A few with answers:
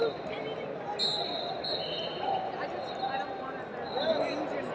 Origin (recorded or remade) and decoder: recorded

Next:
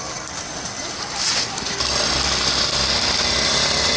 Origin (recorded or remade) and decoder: remade, vocoder, BigVGAN v2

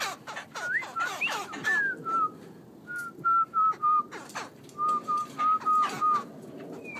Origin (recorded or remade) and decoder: recorded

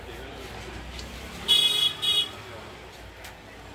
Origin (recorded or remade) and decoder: recorded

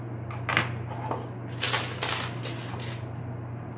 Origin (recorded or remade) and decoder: recorded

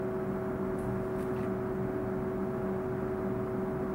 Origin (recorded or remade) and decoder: recorded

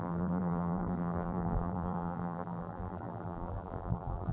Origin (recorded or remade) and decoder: remade, vocoder, BigVGAN v2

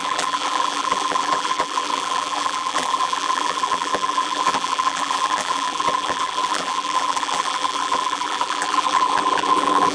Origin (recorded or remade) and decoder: remade, vocoder, BigVGAN v2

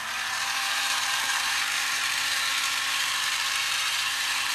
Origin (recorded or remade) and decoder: remade, vocoder, BigVGAN v2